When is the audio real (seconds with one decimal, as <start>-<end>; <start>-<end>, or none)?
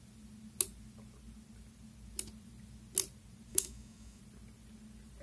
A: 0.0-3.5; 4.2-5.2